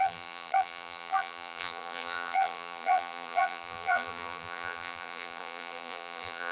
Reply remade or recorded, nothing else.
remade